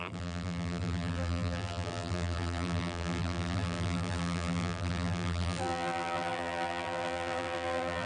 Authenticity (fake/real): fake